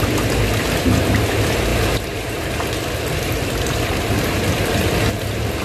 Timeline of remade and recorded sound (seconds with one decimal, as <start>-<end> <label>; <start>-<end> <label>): 0.0-5.6 recorded

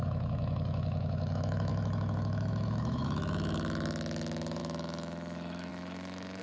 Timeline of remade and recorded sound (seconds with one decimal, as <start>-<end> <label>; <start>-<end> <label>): 0.0-6.4 remade

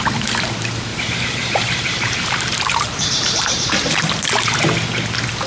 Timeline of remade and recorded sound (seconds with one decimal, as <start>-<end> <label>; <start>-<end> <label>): 0.0-0.9 recorded; 0.9-4.2 remade; 4.2-5.5 recorded

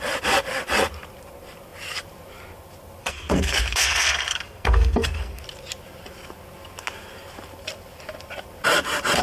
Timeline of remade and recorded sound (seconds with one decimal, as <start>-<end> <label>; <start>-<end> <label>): 0.0-3.0 recorded; 3.0-5.4 remade; 5.4-9.2 recorded

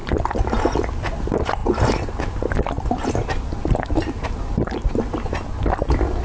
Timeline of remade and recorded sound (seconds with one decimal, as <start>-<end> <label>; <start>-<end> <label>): 0.0-6.2 recorded

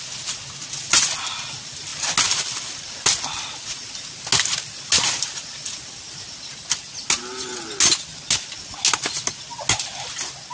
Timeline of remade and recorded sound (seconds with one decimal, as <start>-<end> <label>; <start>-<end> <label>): 0.0-10.5 recorded

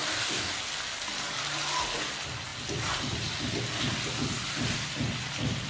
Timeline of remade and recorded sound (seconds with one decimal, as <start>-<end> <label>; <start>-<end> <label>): 0.0-0.5 remade; 0.5-5.7 recorded

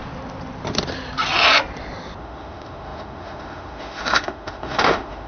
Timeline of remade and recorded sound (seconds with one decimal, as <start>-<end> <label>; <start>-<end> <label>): 0.0-2.2 recorded; 2.2-5.3 remade